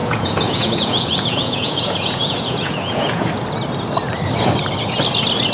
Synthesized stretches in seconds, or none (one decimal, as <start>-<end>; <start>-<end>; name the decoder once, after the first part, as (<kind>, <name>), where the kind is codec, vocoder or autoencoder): 0.0-3.3 (vocoder, Vocos)